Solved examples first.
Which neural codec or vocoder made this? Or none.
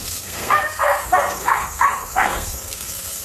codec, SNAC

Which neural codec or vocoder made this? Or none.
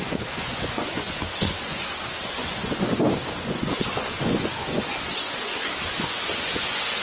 vocoder, Vocos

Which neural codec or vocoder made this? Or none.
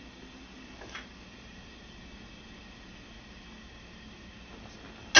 none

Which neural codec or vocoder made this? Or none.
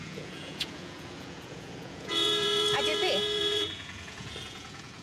vocoder, Vocos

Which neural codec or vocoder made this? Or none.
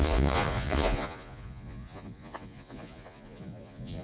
vocoder, Vocos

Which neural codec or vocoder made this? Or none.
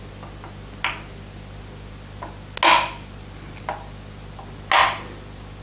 none